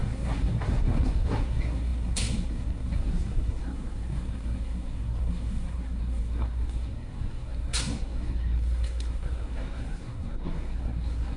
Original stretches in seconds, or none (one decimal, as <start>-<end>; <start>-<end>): none